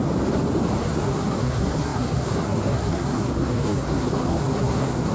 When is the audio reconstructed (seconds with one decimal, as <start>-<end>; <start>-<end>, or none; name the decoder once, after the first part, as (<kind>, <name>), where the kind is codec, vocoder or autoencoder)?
0.8-5.1 (codec, SNAC)